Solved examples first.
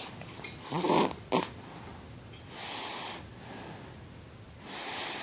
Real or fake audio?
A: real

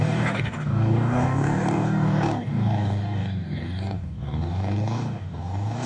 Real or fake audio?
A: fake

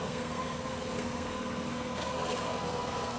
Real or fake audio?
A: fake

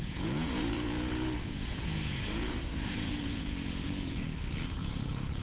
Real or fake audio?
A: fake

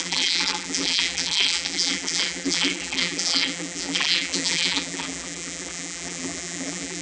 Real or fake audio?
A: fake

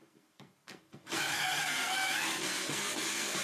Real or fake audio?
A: fake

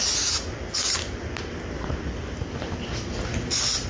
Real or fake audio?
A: real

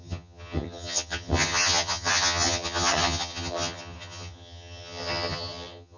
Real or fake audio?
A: fake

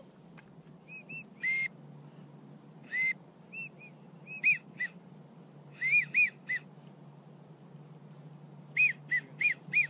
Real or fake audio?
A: real